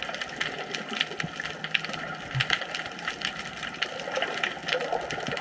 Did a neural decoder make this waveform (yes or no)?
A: no